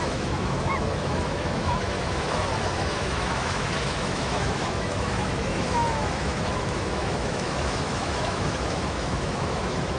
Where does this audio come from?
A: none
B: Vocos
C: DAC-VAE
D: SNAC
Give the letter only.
C